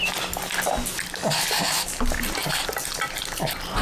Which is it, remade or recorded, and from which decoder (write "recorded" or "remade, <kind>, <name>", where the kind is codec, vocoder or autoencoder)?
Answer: recorded